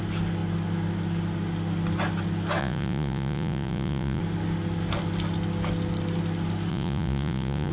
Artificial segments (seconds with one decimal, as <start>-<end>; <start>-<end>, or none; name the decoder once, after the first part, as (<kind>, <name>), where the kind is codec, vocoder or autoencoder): 2.6-4.2 (vocoder, Vocos); 6.7-7.7